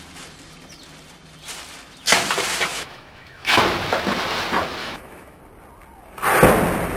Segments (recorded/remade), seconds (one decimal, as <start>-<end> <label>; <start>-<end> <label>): 0.0-2.7 recorded; 2.7-3.6 remade; 3.6-4.8 recorded; 4.8-5.4 remade; 5.4-7.0 recorded